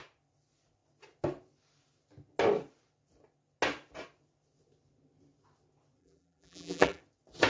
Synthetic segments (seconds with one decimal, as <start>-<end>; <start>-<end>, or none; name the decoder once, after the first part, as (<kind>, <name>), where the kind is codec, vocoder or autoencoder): 6.0-7.0 (vocoder, BigVGAN v2)